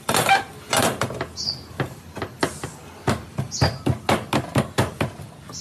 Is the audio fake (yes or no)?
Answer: no